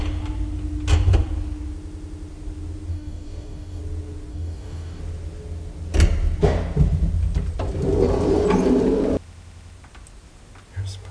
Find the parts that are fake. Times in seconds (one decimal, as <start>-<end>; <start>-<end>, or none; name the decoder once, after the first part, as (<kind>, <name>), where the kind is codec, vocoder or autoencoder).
2.9-3.8 (codec, DAC); 4.3-5.0

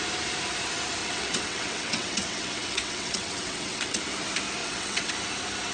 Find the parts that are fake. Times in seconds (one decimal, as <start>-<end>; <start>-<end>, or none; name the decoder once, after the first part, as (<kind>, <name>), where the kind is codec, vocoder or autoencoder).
1.0-4.0 (vocoder, WaveNeXt); 4.6-5.1

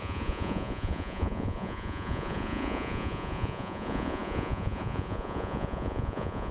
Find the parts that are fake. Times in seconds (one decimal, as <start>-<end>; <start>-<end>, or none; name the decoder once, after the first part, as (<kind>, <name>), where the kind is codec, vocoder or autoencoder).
0.0-6.5 (vocoder, Vocos)

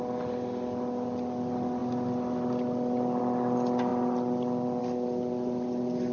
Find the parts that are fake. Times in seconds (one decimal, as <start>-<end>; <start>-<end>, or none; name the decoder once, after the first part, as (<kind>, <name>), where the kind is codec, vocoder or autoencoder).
none

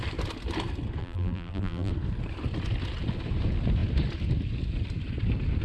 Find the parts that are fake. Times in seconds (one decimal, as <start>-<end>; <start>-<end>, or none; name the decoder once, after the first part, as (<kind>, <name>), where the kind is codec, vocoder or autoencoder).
1.0-1.9 (vocoder, BigVGAN v2)

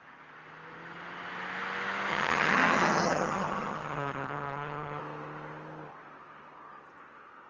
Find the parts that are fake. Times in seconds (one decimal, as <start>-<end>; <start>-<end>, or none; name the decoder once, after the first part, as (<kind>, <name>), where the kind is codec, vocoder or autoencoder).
2.1-5.0 (vocoder, HiFi-GAN)